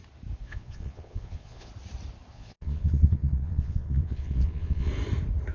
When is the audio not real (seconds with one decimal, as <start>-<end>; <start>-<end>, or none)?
0.4-1.7; 2.3-4.9